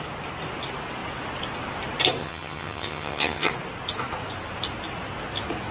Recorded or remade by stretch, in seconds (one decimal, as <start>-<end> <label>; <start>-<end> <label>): 0.0-2.2 recorded; 2.2-3.5 remade; 3.5-5.7 recorded